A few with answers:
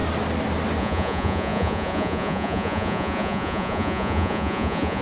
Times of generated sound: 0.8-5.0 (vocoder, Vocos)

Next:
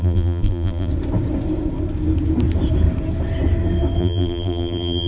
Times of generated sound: 0.0-0.9 (vocoder, BigVGAN v2); 4.0-5.1

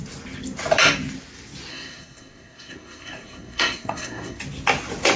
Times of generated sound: 1.7-4.4 (codec, SNAC)

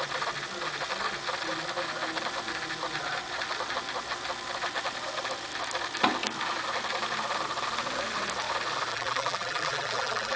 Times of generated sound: 8.9-10.4 (vocoder, BigVGAN v2)

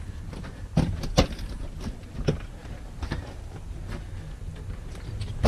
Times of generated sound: none

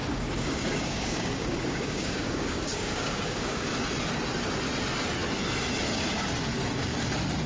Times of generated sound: 0.0-3.7 (codec, DAC)

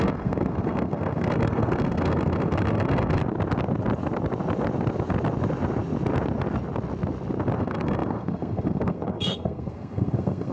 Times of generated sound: 0.0-3.2 (codec, SNAC); 7.6-10.5